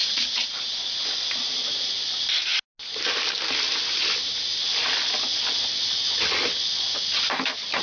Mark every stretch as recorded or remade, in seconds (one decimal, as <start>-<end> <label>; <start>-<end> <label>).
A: 0.0-0.9 remade; 0.9-7.8 recorded